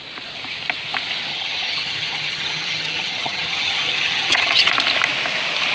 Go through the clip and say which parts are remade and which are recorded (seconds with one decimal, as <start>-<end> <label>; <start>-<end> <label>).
0.0-1.3 recorded; 1.3-4.7 remade; 4.7-5.7 recorded